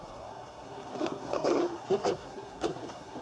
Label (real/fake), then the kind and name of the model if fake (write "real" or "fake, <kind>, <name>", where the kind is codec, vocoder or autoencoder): fake, codec, SNAC